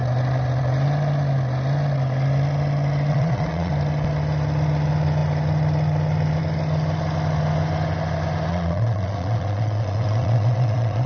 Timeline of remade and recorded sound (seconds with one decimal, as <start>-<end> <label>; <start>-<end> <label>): 0.0-3.1 recorded; 3.1-3.7 remade; 3.7-8.5 recorded; 8.5-11.1 remade